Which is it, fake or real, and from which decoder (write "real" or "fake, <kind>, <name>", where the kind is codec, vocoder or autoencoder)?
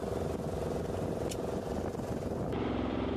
fake, vocoder, BigVGAN v2